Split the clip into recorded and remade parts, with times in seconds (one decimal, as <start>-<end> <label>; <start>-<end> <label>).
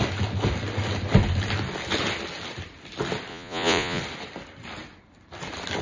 0.0-3.3 recorded; 3.3-4.0 remade; 4.0-5.8 recorded